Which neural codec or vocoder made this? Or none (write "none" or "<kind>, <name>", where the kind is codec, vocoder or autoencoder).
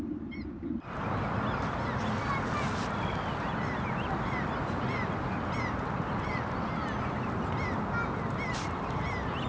none